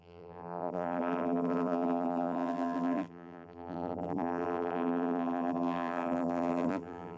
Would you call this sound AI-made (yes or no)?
yes